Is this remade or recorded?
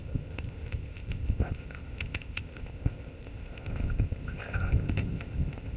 remade